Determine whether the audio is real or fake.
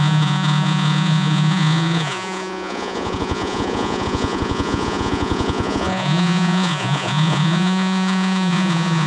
fake